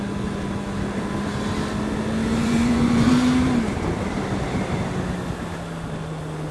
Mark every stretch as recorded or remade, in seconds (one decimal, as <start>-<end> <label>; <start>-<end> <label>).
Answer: 0.0-2.4 recorded; 2.4-3.1 remade; 3.1-6.5 recorded